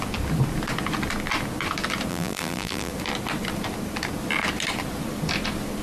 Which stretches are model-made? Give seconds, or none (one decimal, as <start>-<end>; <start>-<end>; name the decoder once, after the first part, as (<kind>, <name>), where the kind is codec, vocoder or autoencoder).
2.1-2.9 (vocoder, BigVGAN v2)